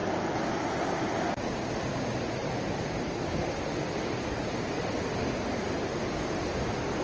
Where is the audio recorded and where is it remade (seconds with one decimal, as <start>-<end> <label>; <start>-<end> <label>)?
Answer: 0.0-7.0 recorded